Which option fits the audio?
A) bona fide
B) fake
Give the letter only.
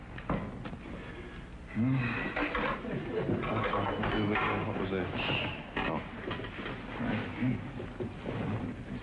A